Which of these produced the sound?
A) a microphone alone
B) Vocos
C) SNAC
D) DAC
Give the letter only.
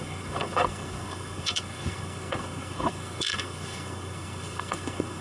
C